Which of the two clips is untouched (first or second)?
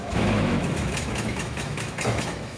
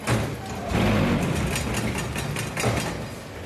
second